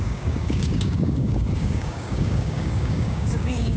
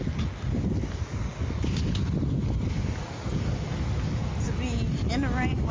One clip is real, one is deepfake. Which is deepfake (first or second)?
first